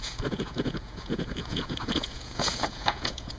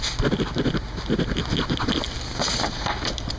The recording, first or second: second